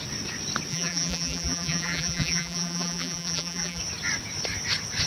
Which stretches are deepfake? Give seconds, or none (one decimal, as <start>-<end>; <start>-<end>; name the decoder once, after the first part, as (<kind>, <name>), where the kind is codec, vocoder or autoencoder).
0.7-3.8 (vocoder, BigVGAN v2)